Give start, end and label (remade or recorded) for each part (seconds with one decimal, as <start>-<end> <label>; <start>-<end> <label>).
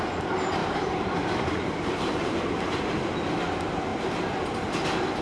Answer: 0.0-0.6 recorded; 0.6-2.8 remade; 2.8-5.2 recorded